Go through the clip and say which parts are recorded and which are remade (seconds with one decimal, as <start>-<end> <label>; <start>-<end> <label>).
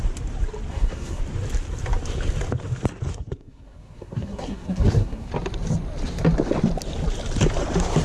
0.0-0.7 recorded; 0.7-1.2 remade; 1.2-3.1 recorded; 3.1-5.3 remade; 5.3-8.0 recorded